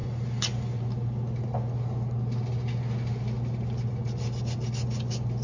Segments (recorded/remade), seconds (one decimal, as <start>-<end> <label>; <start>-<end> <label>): 0.0-5.4 recorded